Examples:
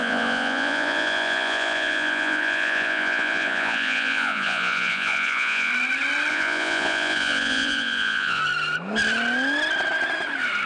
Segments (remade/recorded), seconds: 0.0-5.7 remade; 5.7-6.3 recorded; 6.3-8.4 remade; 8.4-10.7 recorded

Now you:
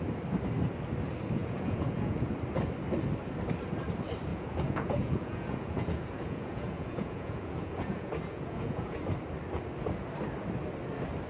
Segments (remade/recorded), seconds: 0.0-1.4 recorded; 1.4-2.3 remade; 2.3-4.3 recorded; 4.3-9.0 remade; 9.0-11.3 recorded

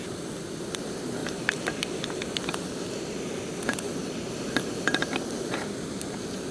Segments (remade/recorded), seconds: 0.0-6.5 recorded